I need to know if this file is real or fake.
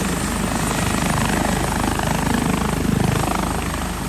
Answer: real